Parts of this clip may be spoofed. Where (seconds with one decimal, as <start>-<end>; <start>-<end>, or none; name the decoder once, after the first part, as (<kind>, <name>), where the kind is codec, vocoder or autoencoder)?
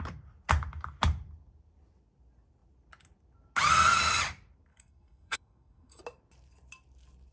4.7-6.0 (codec, SNAC)